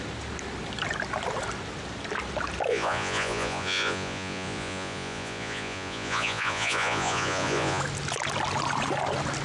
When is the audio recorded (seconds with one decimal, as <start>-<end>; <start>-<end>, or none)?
0.0-2.7; 7.8-9.4